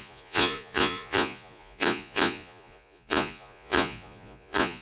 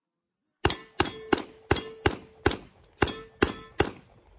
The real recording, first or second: second